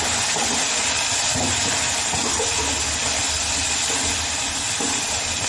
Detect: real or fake real